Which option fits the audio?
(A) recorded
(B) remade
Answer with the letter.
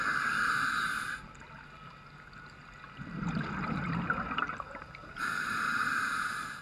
A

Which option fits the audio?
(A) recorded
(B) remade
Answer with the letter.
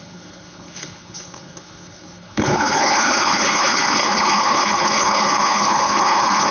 B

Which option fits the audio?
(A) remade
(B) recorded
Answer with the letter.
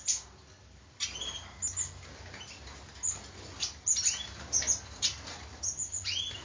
B